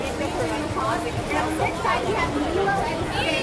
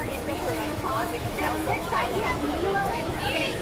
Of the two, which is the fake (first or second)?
second